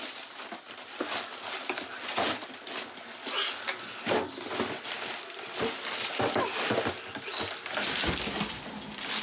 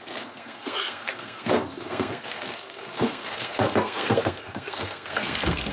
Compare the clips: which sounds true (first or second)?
first